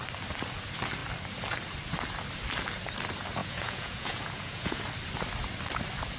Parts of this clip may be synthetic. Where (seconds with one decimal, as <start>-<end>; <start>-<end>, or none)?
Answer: 3.4-4.8